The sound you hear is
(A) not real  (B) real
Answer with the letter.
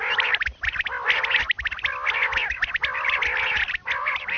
B